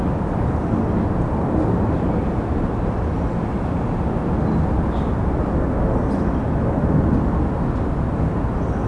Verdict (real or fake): real